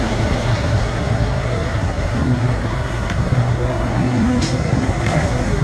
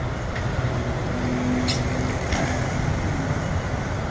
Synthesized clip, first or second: first